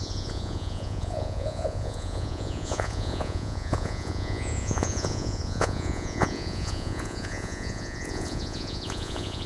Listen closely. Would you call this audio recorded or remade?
remade